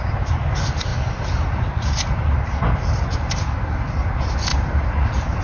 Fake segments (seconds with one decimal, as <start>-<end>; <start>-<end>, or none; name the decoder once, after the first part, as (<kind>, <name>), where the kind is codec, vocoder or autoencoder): none